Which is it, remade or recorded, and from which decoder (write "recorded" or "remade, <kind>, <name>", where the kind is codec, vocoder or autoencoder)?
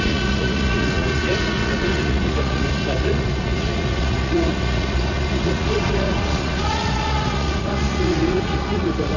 remade, vocoder, Vocos